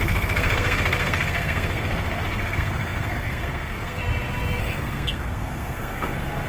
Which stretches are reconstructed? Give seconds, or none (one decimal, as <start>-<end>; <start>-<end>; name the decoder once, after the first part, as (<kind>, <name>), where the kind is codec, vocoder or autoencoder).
0.0-4.0 (codec, SNAC); 4.6-6.5